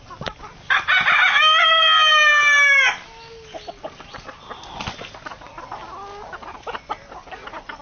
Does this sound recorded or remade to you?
recorded